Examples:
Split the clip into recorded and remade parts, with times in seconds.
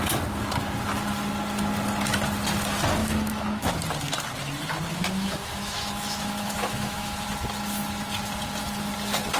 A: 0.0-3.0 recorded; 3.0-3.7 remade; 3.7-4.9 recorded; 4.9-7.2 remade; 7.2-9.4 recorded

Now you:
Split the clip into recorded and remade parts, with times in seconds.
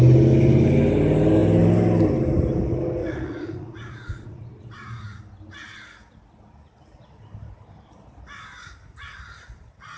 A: 0.0-3.0 recorded; 3.0-5.2 remade; 5.2-10.0 recorded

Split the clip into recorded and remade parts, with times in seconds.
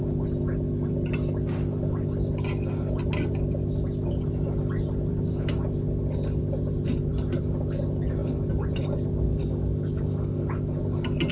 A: 0.0-9.3 recorded; 9.3-10.8 remade; 10.8-11.3 recorded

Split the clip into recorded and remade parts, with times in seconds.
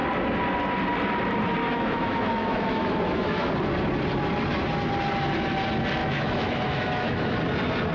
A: 0.0-1.6 recorded; 1.6-3.5 remade; 3.5-6.0 recorded; 6.0-7.4 remade; 7.4-7.9 recorded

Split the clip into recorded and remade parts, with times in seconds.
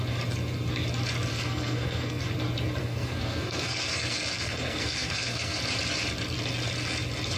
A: 0.0-1.3 recorded; 1.3-2.2 remade; 2.2-2.8 recorded; 2.8-5.6 remade; 5.6-7.4 recorded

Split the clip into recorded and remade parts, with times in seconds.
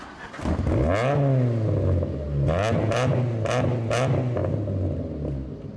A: 0.0-5.8 recorded